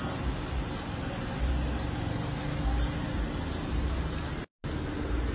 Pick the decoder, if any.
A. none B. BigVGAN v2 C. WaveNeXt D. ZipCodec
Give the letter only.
A